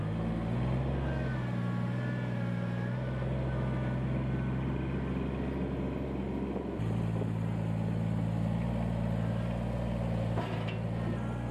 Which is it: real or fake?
real